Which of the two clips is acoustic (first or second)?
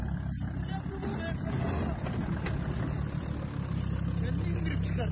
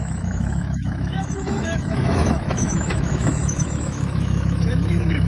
first